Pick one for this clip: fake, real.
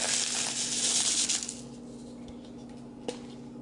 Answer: real